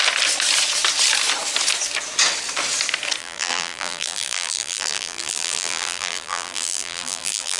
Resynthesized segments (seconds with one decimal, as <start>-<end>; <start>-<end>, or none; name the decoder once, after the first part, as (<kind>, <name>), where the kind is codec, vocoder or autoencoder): 3.2-7.6 (vocoder, BigVGAN v2)